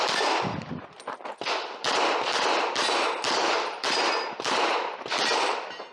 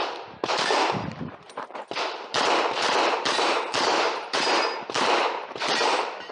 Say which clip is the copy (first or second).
second